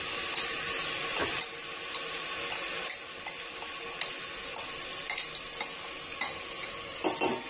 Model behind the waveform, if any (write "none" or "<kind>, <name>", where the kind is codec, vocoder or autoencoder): none